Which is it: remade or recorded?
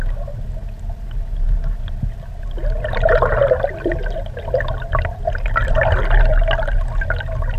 recorded